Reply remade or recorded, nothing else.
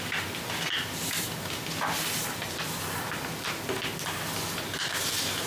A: recorded